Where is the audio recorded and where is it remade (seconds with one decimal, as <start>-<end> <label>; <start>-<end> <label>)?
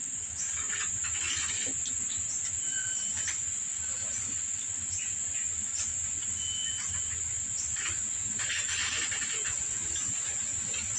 0.0-9.4 recorded; 9.4-9.9 remade; 9.9-11.0 recorded